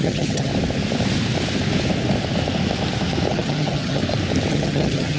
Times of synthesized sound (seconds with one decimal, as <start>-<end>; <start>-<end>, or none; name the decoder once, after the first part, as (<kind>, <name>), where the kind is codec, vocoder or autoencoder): 0.0-0.5 (vocoder, HiFi-GAN); 3.3-4.0; 4.5-5.2